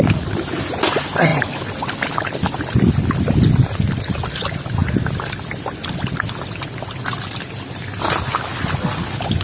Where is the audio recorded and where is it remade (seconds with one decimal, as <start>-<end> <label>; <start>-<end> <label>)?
0.0-9.4 recorded